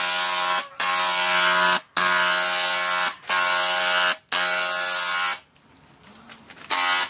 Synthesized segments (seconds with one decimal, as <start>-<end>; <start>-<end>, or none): none